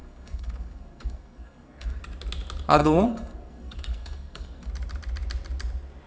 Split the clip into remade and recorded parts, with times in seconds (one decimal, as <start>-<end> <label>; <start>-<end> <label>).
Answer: 0.0-2.0 remade; 2.0-2.8 recorded; 2.8-4.7 remade; 4.7-6.1 recorded